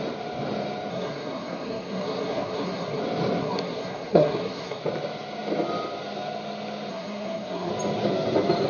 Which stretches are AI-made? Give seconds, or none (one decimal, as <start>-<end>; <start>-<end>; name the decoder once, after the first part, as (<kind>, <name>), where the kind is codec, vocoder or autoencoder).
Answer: 0.9-3.0 (codec, SNAC); 3.4-4.8; 6.9-7.7